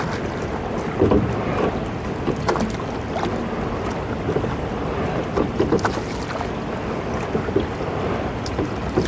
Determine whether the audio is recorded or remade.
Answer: recorded